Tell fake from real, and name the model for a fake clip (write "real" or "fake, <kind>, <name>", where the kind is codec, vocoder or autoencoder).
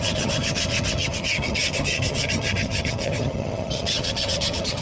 fake, vocoder, HiFi-GAN